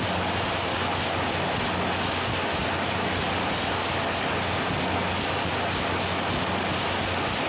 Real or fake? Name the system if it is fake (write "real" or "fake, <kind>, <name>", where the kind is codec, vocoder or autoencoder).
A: real